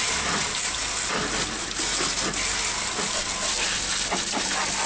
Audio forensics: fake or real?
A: real